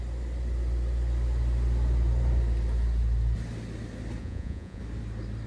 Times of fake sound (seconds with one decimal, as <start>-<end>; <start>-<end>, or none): 4.2-4.8